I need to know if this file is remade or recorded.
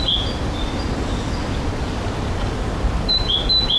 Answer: remade